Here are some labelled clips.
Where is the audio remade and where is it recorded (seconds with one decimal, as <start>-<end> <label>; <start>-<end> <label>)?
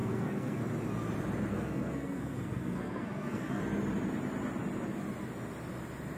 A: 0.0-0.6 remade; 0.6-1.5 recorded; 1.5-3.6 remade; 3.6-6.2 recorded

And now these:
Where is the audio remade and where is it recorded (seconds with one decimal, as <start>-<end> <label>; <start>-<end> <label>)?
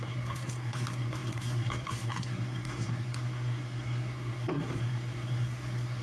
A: 0.0-6.0 remade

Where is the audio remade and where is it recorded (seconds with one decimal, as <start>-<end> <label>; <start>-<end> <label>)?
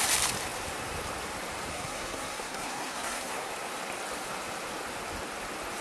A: 0.0-1.7 recorded; 1.7-3.5 remade; 3.5-5.8 recorded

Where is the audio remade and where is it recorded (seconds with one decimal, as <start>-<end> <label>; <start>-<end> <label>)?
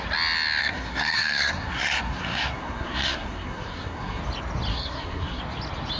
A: 0.0-0.6 recorded; 0.6-4.2 remade; 4.2-4.7 recorded; 4.7-5.4 remade; 5.4-6.0 recorded